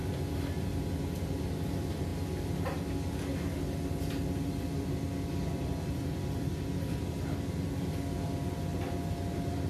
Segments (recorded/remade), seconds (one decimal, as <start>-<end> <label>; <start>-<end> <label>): 0.0-9.7 recorded